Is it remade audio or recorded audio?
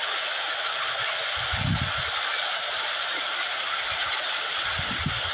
recorded